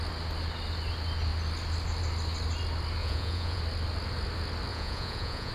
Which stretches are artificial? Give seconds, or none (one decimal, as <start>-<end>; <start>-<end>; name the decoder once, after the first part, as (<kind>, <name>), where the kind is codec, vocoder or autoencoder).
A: 3.0-3.6 (vocoder, Vocos); 4.7-5.5